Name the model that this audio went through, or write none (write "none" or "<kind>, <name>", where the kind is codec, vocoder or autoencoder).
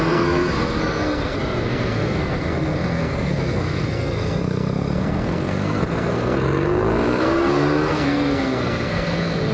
codec, SNAC